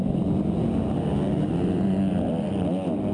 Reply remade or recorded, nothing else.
recorded